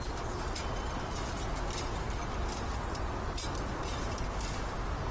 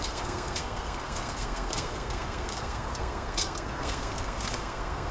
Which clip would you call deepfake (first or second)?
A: second